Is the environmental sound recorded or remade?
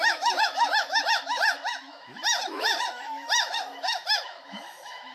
remade